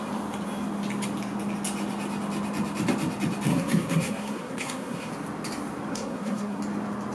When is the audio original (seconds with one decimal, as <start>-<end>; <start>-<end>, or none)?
0.0-3.5; 5.1-5.9; 6.6-7.1